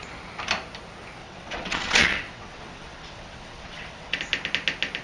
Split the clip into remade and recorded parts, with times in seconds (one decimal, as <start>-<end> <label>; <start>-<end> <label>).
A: 0.0-1.2 recorded; 1.2-4.2 remade; 4.2-5.0 recorded